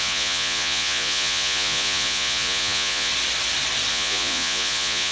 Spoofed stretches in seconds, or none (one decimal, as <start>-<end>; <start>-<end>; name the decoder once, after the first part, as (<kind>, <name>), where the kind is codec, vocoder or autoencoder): 0.0-3.1 (vocoder, Vocos); 3.9-5.1